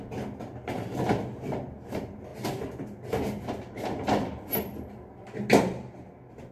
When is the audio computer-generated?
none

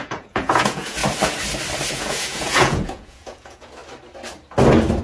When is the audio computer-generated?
0.0-1.0; 1.9-3.8

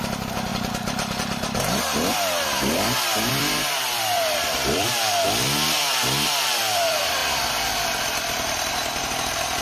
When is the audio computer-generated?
0.0-9.6

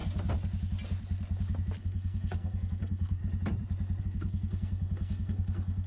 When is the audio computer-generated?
1.8-3.2; 4.0-5.9

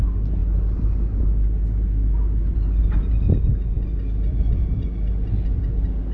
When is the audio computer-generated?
none

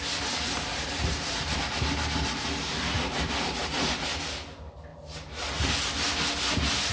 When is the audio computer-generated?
0.7-1.6; 2.7-4.2; 4.9-6.1

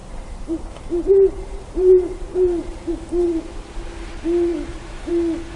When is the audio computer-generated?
0.0-3.4; 4.5-5.1

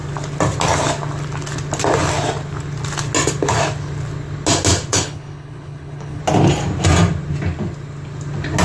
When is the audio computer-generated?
4.9-6.2